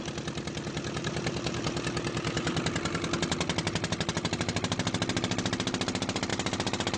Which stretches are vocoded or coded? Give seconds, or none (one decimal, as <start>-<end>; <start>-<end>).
none